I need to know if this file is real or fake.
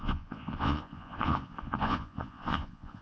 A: fake